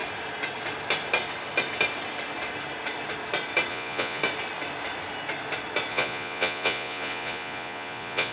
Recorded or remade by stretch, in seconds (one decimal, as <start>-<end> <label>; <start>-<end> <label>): 0.0-3.7 recorded; 3.7-4.2 remade; 4.2-5.9 recorded; 5.9-8.3 remade